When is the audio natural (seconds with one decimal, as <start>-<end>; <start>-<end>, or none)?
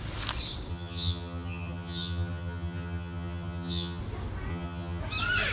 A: 0.0-0.7; 4.0-4.5; 5.0-5.5